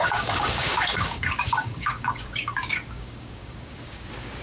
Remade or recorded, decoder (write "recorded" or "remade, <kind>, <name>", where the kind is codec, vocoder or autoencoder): remade, codec, DAC